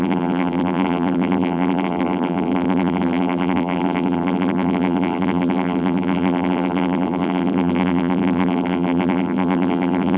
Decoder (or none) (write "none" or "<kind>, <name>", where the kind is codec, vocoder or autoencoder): vocoder, BigVGAN v2